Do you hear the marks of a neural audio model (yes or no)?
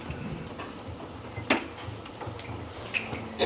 no